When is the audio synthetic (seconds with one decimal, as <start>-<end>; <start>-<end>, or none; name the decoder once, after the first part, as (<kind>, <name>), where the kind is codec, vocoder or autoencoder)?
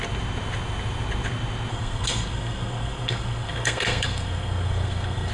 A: 1.7-5.3 (codec, SNAC)